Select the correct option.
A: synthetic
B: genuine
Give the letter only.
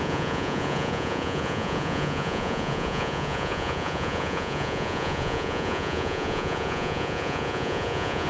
A